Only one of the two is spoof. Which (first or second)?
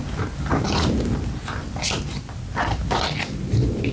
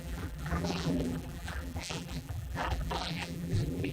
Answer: second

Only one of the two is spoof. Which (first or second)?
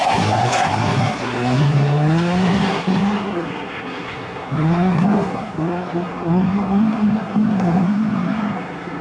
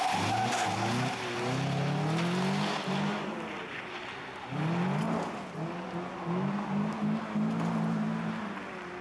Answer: first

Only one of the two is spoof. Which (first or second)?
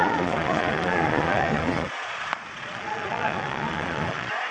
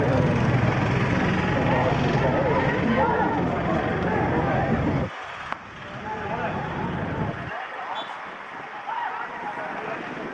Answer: first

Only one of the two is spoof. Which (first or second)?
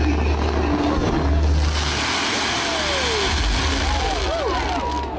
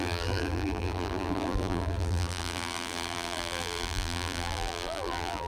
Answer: second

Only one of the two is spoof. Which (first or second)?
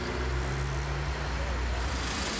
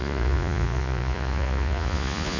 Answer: second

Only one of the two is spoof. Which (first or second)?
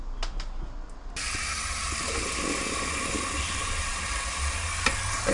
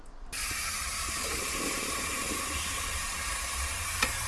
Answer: second